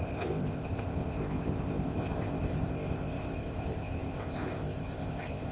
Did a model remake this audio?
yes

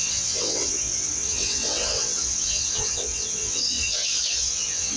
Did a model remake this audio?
yes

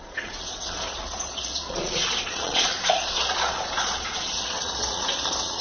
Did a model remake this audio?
yes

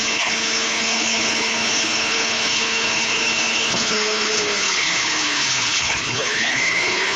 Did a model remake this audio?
yes